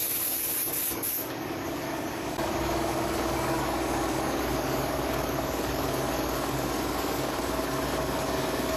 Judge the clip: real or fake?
fake